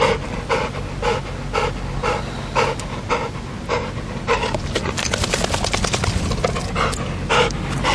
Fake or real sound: real